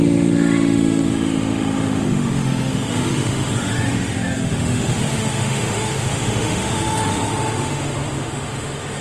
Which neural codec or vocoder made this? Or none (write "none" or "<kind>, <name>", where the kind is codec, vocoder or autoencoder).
autoencoder, DAC-VAE